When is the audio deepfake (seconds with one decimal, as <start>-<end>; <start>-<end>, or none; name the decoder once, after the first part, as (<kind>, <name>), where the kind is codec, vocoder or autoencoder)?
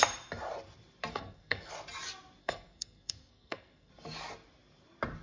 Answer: 1.1-1.7 (codec, SNAC); 2.4-3.9